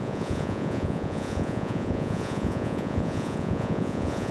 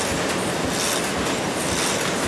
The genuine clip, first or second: second